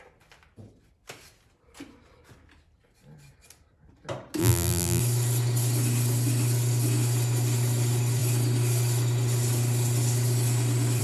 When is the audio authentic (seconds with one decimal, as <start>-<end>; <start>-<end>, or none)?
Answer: 0.0-4.4; 5.0-11.0